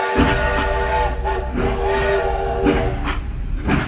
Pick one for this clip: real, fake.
real